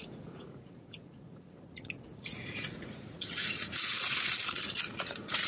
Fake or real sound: fake